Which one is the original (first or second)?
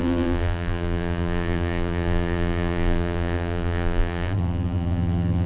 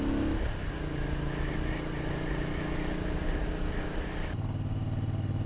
second